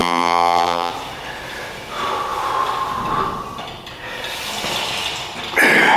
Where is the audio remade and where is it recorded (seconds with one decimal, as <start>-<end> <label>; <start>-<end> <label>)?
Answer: 0.0-0.9 remade; 0.9-6.0 recorded